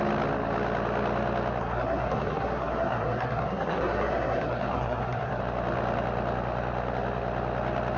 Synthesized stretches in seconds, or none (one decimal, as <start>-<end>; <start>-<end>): 1.6-5.4